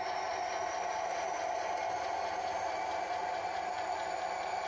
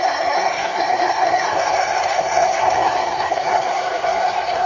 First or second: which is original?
first